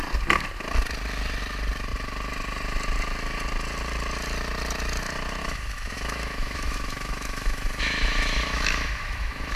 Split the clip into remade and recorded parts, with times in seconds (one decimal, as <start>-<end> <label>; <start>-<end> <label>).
0.0-5.4 recorded; 5.4-9.6 remade